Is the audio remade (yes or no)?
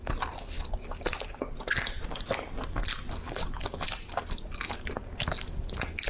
no